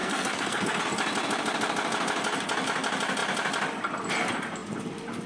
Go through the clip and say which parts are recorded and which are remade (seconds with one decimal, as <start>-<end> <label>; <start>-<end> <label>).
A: 0.0-0.8 remade; 0.8-5.3 recorded